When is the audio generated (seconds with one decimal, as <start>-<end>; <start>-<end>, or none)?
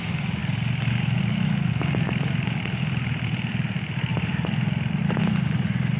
none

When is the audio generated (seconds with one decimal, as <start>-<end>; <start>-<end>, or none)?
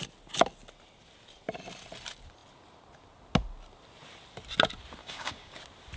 5.0-5.6